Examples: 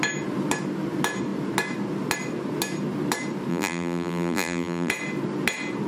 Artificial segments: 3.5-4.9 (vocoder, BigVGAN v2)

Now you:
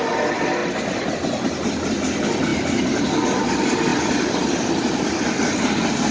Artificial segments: none

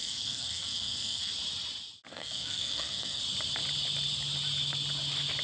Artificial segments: 0.0-1.3 (codec, SNAC); 2.1-3.2

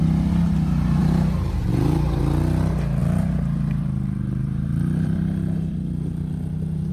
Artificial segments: 1.0-2.2 (vocoder, BigVGAN v2); 3.0-6.9